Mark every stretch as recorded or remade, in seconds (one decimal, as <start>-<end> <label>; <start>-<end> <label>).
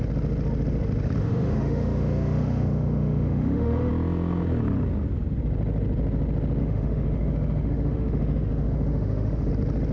0.0-1.2 recorded; 1.2-3.9 remade; 3.9-6.6 recorded; 6.6-9.5 remade; 9.5-9.9 recorded